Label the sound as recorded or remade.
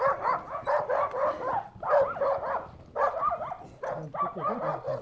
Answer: recorded